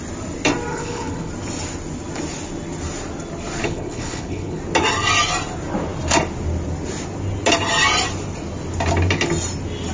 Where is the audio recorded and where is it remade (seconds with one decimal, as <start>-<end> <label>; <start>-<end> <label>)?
0.0-0.7 recorded; 0.7-1.3 remade; 1.3-3.6 recorded; 3.6-4.6 remade; 4.6-9.9 recorded